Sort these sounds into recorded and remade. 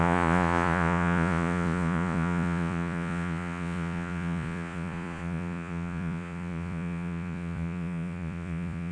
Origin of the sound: remade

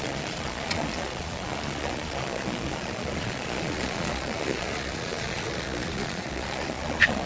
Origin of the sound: remade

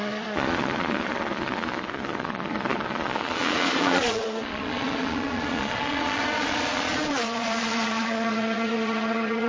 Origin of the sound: remade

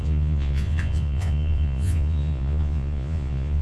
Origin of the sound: remade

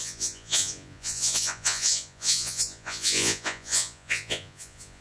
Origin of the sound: remade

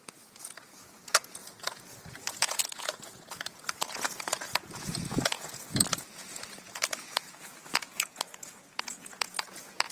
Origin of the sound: remade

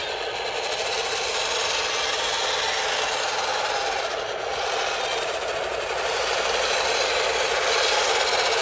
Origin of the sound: recorded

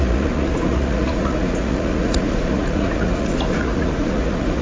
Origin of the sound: remade